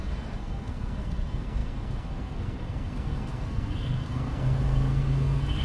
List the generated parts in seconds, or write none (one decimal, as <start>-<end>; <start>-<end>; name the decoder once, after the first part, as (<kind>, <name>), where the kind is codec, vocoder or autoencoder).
0.0-5.6 (codec, SNAC)